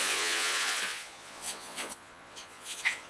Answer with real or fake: fake